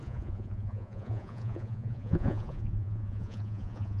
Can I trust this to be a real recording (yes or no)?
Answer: no